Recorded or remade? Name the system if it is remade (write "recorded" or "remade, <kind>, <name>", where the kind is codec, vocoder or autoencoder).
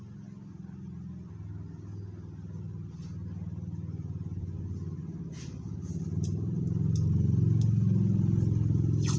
recorded